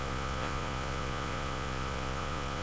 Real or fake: fake